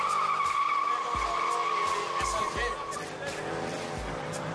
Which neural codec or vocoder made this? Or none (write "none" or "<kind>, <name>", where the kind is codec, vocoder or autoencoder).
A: none